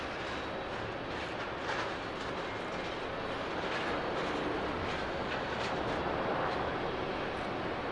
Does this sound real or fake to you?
real